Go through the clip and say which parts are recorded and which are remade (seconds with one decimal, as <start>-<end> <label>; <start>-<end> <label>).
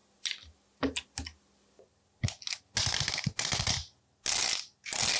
0.0-5.2 recorded